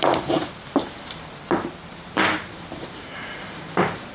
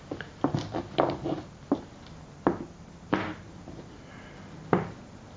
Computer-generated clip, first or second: first